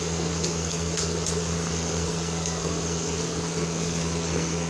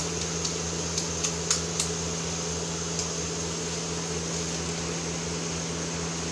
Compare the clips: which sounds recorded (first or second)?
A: second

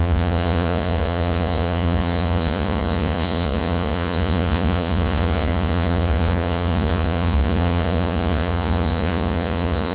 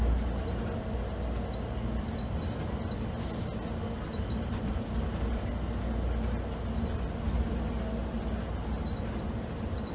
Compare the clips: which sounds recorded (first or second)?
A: second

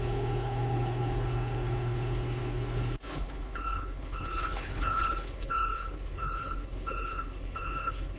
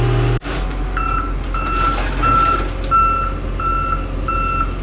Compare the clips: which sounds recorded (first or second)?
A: second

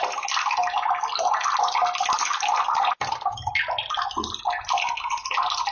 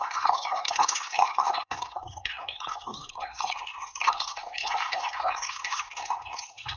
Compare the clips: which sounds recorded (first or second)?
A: first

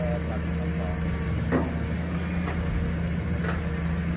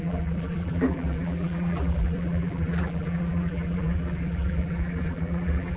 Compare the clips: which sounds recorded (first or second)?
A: first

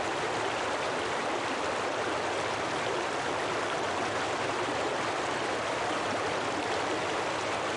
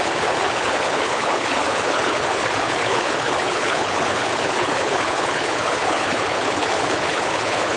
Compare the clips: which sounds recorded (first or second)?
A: first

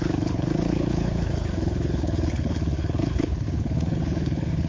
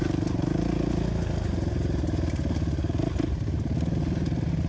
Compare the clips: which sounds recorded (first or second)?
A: second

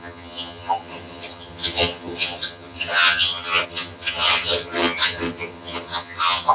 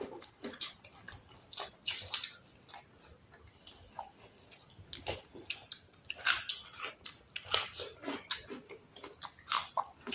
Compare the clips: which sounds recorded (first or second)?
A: second